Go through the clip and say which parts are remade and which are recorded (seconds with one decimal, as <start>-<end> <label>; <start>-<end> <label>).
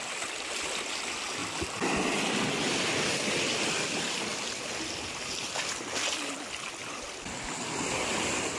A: 0.0-8.6 recorded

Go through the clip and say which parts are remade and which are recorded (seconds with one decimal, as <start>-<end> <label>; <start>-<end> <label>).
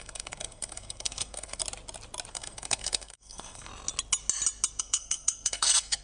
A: 0.0-1.6 remade; 1.6-2.3 recorded; 2.3-3.7 remade; 3.7-4.8 recorded; 4.8-6.0 remade